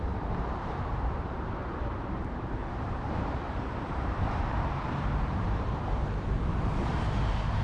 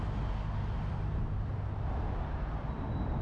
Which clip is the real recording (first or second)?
second